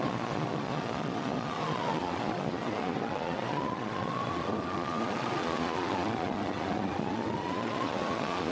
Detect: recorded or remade remade